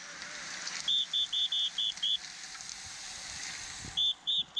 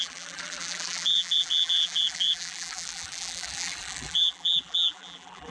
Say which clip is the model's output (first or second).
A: second